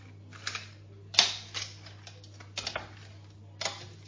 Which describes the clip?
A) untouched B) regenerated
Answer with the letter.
A